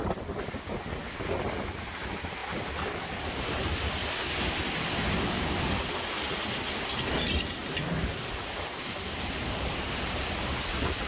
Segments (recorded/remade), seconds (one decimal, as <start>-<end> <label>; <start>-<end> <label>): 0.0-2.4 recorded; 2.4-3.0 remade; 3.0-7.6 recorded; 7.6-9.8 remade; 9.8-11.1 recorded